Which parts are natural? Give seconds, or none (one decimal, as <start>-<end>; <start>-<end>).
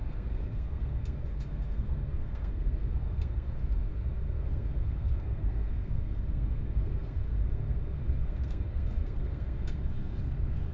none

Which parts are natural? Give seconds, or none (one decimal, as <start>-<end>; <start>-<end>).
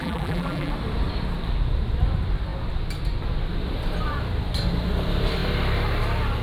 0.7-6.4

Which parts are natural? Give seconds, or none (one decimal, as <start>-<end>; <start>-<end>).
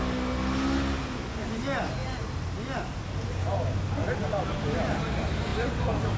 0.0-6.2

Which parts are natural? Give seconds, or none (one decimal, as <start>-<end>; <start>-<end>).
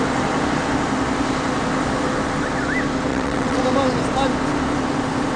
0.0-3.1; 3.6-5.4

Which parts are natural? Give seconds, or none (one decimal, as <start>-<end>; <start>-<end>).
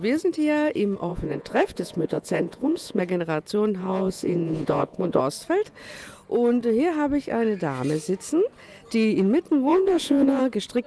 0.0-1.1; 3.0-3.8; 5.2-9.7; 10.4-10.9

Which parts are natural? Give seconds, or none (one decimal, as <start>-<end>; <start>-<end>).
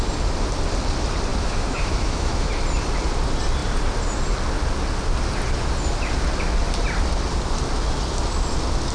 0.0-1.3; 2.5-8.9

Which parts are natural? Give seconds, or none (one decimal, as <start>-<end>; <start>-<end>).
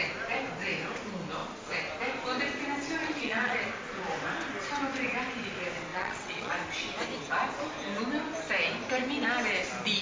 0.0-3.0; 3.6-5.9; 6.5-10.0